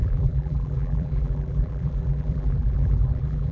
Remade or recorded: remade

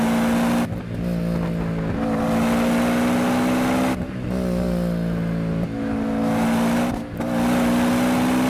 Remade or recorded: recorded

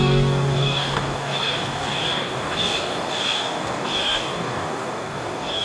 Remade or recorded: remade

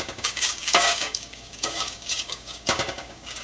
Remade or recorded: remade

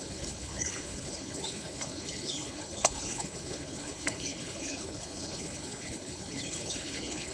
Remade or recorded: remade